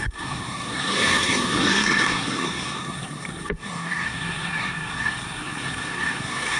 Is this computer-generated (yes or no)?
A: yes